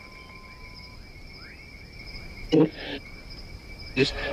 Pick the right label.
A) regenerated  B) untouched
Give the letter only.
B